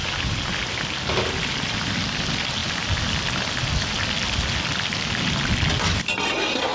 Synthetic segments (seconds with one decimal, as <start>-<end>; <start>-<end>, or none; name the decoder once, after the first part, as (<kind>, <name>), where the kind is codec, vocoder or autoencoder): none